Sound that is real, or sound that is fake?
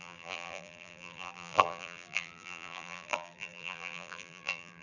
fake